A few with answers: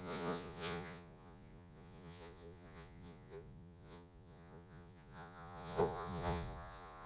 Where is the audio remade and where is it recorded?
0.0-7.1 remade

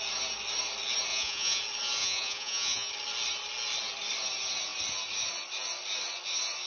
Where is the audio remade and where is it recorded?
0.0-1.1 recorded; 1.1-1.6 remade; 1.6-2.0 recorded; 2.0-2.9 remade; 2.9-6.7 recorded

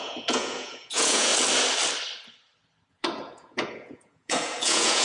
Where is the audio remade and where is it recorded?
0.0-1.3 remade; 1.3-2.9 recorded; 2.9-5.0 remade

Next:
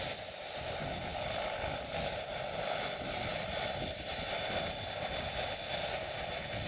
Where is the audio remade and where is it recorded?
0.0-6.7 recorded

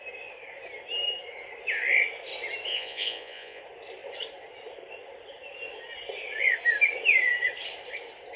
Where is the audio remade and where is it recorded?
0.0-2.7 recorded; 2.7-3.6 remade; 3.6-8.4 recorded

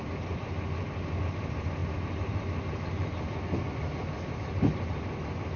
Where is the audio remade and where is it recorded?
0.0-5.6 recorded

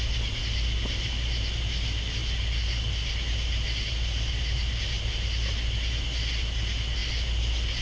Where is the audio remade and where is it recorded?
0.0-7.8 recorded